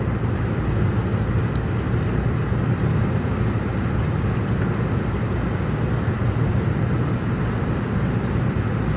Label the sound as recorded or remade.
recorded